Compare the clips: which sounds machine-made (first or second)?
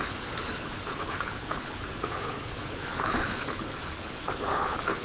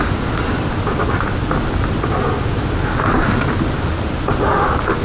first